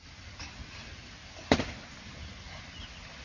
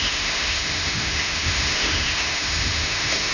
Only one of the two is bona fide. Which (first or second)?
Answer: first